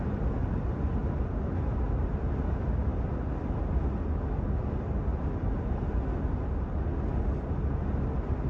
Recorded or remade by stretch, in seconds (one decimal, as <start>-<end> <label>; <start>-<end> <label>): 0.0-8.5 recorded